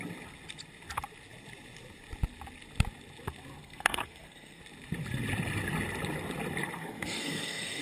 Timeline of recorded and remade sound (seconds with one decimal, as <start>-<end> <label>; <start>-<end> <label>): 0.0-3.6 recorded; 3.6-4.6 remade; 4.6-6.8 recorded; 6.8-7.8 remade